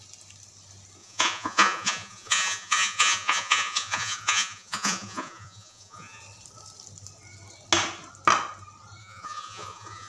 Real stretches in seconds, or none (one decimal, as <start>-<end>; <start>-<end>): 0.0-1.0; 6.2-9.0